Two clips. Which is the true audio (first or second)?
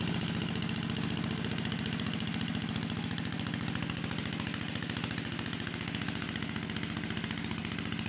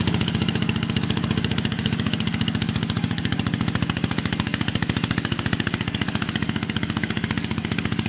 first